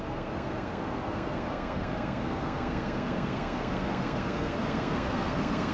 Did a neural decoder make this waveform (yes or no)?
yes